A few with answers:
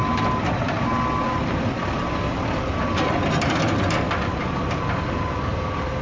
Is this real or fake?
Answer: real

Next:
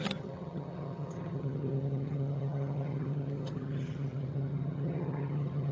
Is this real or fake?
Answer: fake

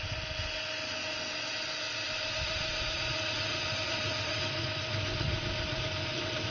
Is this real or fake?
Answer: real